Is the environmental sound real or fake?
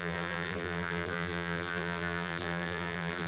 fake